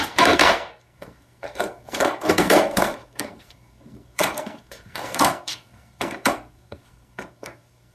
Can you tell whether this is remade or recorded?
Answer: remade